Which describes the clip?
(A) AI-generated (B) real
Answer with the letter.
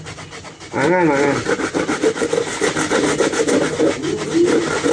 B